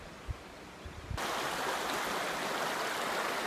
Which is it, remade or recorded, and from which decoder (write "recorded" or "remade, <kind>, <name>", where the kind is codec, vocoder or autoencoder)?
recorded